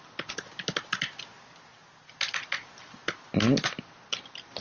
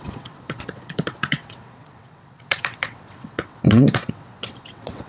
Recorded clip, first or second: first